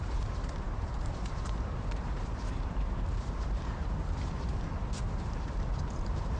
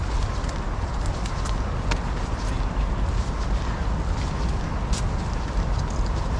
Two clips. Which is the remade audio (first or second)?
first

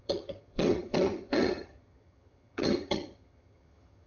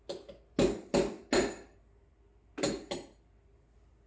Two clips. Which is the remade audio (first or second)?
first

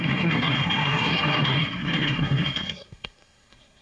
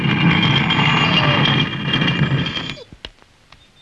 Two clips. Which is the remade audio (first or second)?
first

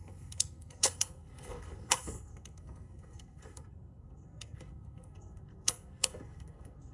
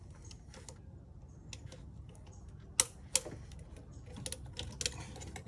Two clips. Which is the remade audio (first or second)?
first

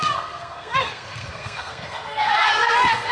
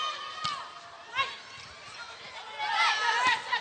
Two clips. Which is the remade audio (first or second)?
first